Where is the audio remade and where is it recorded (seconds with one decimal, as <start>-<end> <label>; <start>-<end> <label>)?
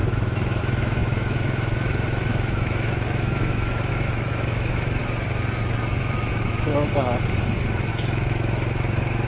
0.0-5.0 remade; 5.0-6.0 recorded; 6.0-6.7 remade; 6.7-7.9 recorded; 7.9-9.3 remade